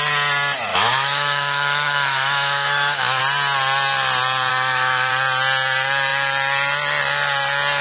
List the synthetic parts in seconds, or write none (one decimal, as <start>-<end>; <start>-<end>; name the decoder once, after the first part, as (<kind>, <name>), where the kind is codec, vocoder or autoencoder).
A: 0.7-3.2 (autoencoder, DAC-VAE); 4.5-5.1